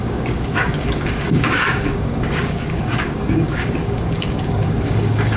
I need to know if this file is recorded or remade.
remade